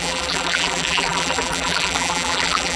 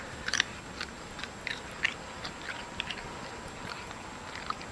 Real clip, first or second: second